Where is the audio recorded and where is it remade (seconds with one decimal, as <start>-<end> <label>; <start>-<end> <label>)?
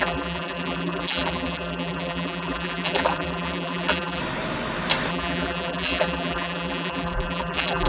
0.0-4.2 remade; 4.2-5.1 recorded; 5.1-7.9 remade